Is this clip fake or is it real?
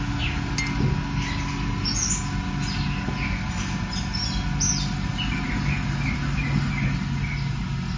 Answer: real